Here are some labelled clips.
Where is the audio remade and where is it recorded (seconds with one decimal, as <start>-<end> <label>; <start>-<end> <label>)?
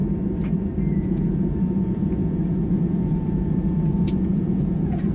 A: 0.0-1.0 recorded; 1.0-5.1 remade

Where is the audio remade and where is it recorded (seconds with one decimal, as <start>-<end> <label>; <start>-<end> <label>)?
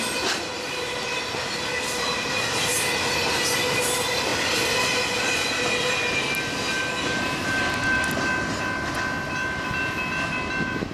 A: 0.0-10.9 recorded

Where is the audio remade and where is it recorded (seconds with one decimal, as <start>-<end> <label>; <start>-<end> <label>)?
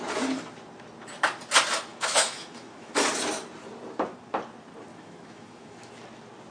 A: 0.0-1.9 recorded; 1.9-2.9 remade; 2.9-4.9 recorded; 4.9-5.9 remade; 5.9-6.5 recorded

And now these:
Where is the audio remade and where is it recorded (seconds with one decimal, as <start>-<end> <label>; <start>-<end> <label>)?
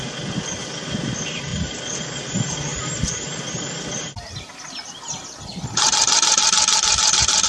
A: 0.0-5.5 recorded; 5.5-7.5 remade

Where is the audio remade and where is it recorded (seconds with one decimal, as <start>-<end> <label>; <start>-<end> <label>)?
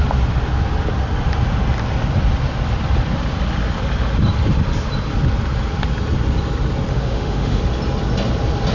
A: 0.0-6.9 recorded; 6.9-7.6 remade; 7.6-8.7 recorded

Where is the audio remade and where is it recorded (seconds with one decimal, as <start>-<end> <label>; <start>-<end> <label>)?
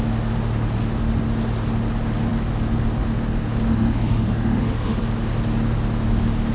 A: 0.0-3.7 recorded; 3.7-5.0 remade; 5.0-6.5 recorded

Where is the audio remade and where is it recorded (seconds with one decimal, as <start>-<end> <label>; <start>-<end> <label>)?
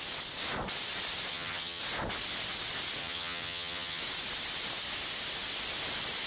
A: 0.0-1.3 recorded; 1.3-1.8 remade; 1.8-3.0 recorded; 3.0-4.0 remade; 4.0-6.3 recorded